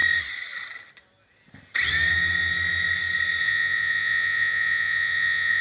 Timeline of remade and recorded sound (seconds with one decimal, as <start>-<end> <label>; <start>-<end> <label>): 0.0-3.4 recorded; 3.4-5.6 remade